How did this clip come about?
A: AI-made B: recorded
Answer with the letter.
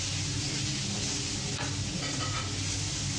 B